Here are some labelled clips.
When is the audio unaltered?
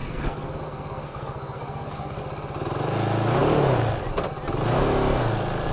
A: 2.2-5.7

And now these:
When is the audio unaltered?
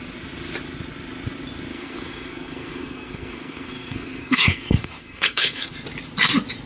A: 0.0-1.7; 5.7-6.7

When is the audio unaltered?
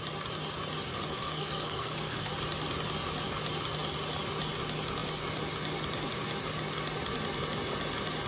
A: 0.0-0.9; 2.3-8.3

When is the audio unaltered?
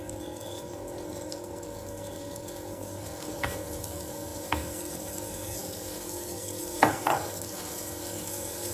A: none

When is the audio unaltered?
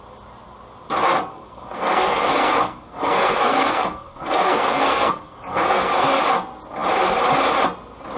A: 0.0-1.3; 6.2-8.2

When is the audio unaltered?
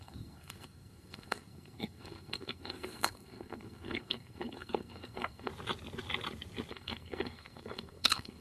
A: 5.5-6.7